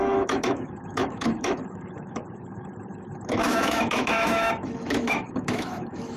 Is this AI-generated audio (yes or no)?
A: yes